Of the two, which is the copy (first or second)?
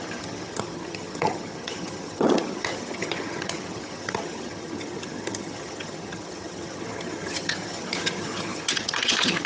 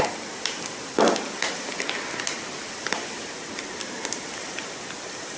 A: first